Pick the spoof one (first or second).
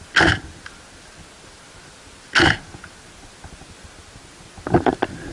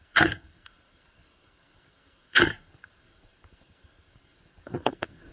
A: second